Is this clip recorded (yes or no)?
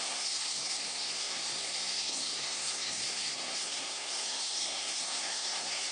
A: no